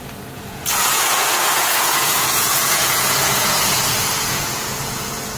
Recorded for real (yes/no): no